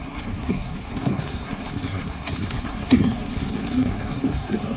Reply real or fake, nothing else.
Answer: fake